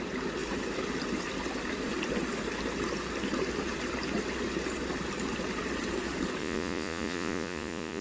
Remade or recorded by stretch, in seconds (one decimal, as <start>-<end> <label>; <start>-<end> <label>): 0.0-6.4 recorded; 6.4-8.0 remade